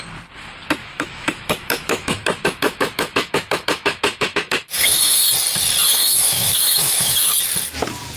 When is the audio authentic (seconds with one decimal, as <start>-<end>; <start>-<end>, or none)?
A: 0.0-0.8; 5.3-5.9; 7.3-8.2